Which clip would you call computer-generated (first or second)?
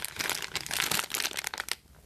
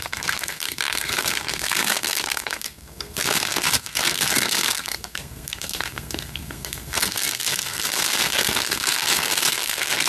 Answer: second